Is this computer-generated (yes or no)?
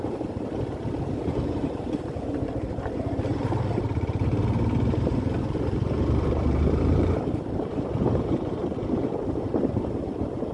yes